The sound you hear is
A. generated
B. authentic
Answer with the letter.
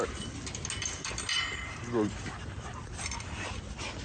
B